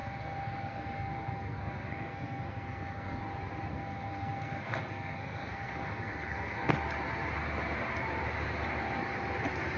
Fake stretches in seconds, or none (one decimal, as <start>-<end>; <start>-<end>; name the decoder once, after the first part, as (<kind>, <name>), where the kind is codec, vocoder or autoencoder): 0.0-3.2 (codec, SNAC); 3.7-6.7